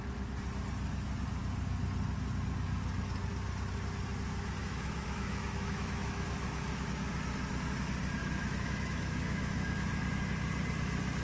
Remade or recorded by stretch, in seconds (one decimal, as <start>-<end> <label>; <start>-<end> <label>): 0.0-4.6 recorded; 4.6-7.1 remade; 7.1-8.2 recorded; 8.2-9.9 remade; 9.9-11.2 recorded

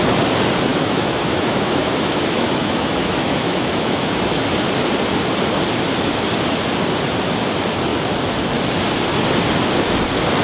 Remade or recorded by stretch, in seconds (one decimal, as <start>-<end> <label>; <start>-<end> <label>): 0.0-0.7 recorded; 0.7-4.4 remade; 4.4-10.4 recorded

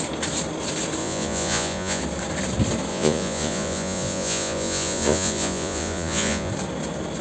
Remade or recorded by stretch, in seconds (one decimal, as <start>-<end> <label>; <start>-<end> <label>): 0.0-1.0 recorded; 1.0-2.0 remade; 2.0-2.9 recorded; 2.9-6.5 remade; 6.5-7.2 recorded

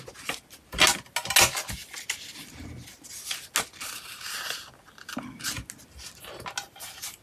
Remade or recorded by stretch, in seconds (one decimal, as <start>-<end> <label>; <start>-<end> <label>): 0.0-7.2 recorded

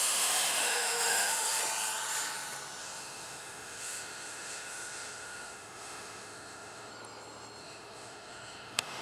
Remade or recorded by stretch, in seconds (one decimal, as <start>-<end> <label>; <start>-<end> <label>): 0.0-1.6 remade; 1.6-2.8 recorded; 2.8-6.9 remade; 6.9-7.6 recorded; 7.6-9.0 remade